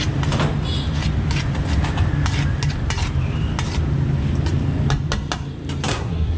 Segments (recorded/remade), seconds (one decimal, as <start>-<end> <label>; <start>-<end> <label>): 0.0-5.9 recorded; 5.9-6.4 remade